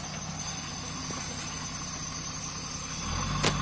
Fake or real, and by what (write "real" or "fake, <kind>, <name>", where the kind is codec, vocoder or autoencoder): real